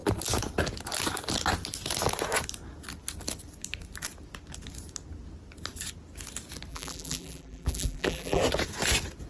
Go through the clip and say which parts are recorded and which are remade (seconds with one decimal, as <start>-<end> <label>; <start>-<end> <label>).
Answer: 0.0-6.7 recorded; 6.7-8.4 remade; 8.4-9.3 recorded

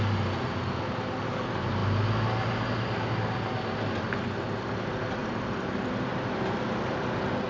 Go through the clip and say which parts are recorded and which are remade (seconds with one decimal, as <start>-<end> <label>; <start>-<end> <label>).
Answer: 0.0-5.2 recorded; 5.2-5.9 remade; 5.9-7.5 recorded

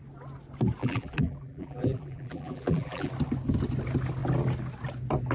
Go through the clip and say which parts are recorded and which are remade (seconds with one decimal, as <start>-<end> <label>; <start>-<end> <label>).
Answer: 0.0-0.8 recorded; 0.8-3.1 remade; 3.1-5.3 recorded

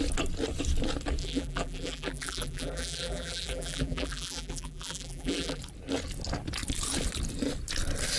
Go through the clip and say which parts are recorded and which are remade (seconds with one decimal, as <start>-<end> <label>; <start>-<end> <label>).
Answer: 0.0-1.2 recorded; 1.2-5.6 remade; 5.6-8.2 recorded

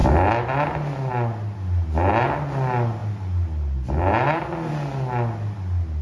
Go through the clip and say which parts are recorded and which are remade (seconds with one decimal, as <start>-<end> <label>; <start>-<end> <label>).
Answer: 0.0-6.0 recorded

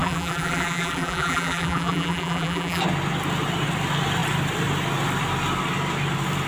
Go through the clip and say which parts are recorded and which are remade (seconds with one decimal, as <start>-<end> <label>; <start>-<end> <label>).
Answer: 0.0-2.8 remade; 2.8-6.5 recorded

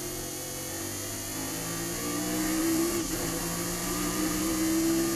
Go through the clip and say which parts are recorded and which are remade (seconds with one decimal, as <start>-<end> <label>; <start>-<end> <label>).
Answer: 0.0-2.6 recorded; 2.6-3.4 remade; 3.4-3.8 recorded; 3.8-4.5 remade; 4.5-5.2 recorded

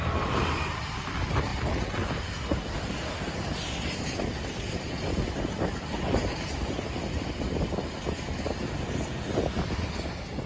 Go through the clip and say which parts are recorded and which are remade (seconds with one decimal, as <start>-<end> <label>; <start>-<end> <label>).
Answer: 0.0-10.5 recorded